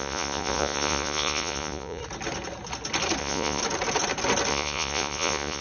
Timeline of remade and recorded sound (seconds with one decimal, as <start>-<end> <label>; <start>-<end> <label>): 0.0-2.0 remade; 2.0-3.2 recorded; 3.2-3.6 remade; 3.6-4.5 recorded; 4.5-5.6 remade